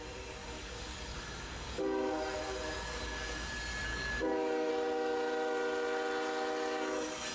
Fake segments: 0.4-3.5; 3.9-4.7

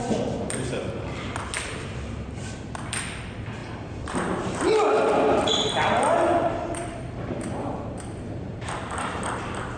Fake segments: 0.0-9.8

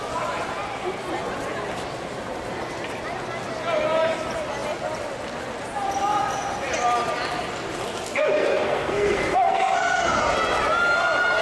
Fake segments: 8.2-10.2

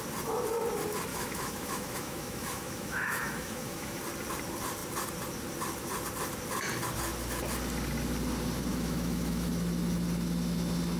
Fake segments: 1.1-4.0; 8.7-9.5